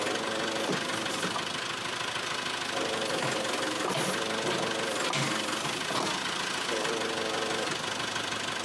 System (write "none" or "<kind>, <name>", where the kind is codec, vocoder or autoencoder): none